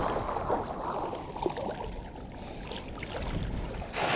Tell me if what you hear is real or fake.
fake